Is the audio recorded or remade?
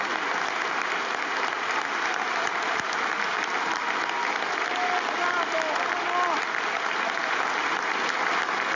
recorded